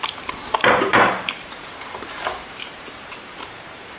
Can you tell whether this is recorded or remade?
remade